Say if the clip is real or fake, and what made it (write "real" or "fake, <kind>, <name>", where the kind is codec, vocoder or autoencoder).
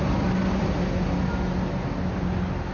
real